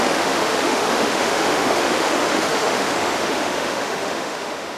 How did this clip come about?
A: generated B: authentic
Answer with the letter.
A